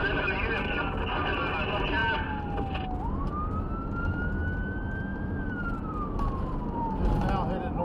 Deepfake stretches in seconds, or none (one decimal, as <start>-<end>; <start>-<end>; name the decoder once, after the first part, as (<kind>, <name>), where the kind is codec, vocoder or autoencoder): 5.1-7.0 (vocoder, BigVGAN v2)